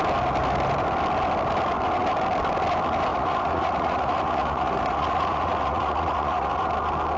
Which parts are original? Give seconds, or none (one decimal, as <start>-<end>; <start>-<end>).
0.0-3.1; 6.7-7.2